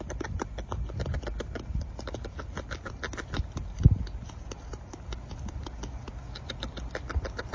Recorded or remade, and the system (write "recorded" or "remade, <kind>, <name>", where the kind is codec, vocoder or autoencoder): recorded